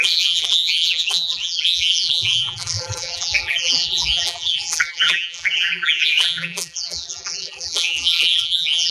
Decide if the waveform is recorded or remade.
remade